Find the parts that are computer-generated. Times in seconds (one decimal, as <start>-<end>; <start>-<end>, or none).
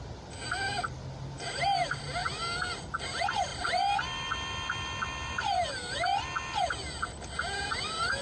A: 3.5-5.7